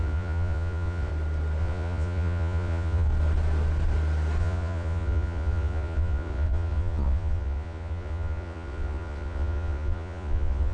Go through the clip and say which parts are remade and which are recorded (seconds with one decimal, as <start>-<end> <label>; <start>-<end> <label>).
0.0-1.1 remade; 1.1-1.6 recorded; 1.6-3.1 remade; 3.1-4.4 recorded; 4.4-10.7 remade

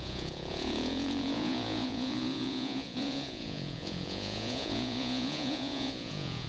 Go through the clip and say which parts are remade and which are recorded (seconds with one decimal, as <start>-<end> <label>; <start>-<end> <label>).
0.0-6.5 remade